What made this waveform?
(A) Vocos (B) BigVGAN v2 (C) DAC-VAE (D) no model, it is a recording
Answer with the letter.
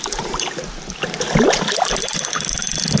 D